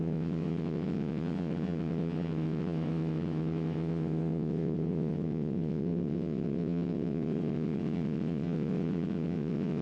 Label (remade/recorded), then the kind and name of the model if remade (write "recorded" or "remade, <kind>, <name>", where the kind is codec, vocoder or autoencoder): remade, vocoder, WaveNeXt